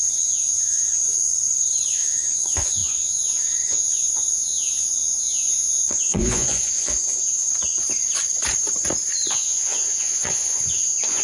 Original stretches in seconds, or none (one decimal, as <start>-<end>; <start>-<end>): 1.3-1.9; 7.5-9.3